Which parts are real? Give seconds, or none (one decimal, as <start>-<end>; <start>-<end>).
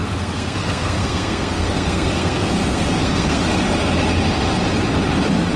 3.4-5.6